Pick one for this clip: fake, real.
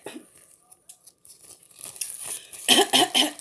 real